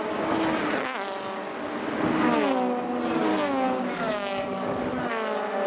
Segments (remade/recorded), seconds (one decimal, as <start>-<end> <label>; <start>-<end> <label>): 0.0-3.3 recorded; 3.3-5.1 remade; 5.1-5.7 recorded

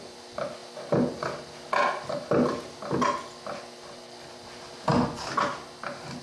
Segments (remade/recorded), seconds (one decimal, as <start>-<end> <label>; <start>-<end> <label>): 0.0-6.2 recorded

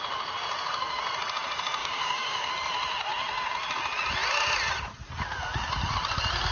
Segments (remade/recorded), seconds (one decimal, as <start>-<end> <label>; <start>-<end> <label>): 0.0-1.8 recorded; 1.8-2.5 remade; 2.5-6.5 recorded

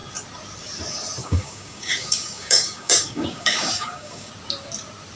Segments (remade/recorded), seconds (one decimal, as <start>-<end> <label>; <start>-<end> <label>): 0.0-1.2 recorded; 1.2-4.3 remade; 4.3-5.2 recorded

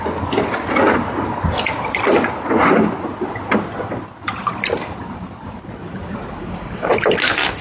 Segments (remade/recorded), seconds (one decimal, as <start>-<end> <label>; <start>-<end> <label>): 0.0-6.4 recorded; 6.4-6.9 remade; 6.9-7.6 recorded

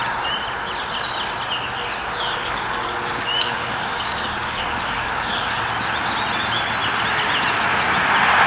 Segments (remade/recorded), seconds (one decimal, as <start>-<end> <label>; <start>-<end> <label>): 0.0-2.4 recorded; 2.4-5.6 remade; 5.6-8.5 recorded

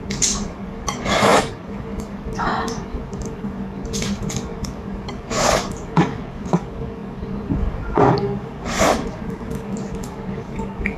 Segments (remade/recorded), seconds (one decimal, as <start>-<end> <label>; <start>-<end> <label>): 0.0-11.0 remade

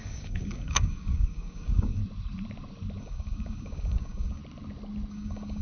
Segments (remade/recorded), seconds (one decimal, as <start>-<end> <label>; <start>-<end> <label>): 0.0-2.0 remade; 2.0-3.0 recorded; 3.0-4.4 remade; 4.4-5.1 recorded; 5.1-5.6 remade